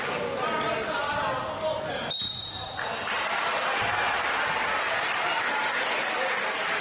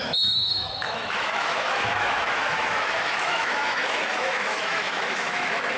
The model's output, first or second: second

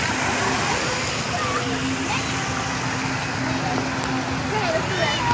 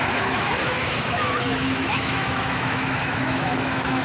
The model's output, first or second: second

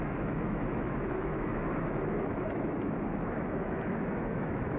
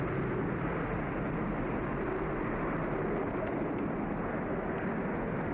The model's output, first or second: first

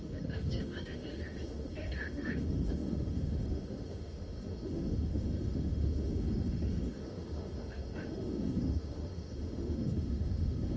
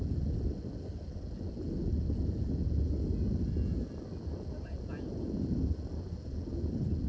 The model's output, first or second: first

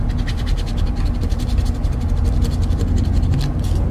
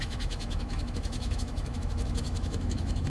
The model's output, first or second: second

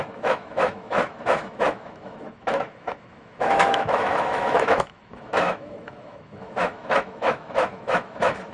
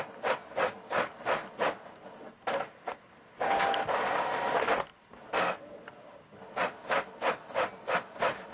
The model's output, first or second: first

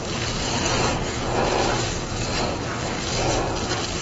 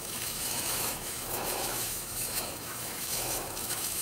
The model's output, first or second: second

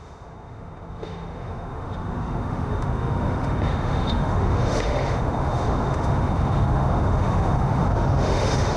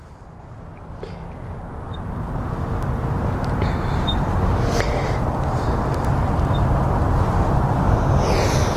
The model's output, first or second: first